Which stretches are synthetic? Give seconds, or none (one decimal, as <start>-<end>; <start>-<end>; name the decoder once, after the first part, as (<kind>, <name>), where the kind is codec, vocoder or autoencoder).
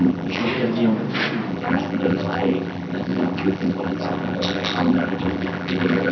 0.0-0.4 (vocoder, BigVGAN v2); 1.5-6.1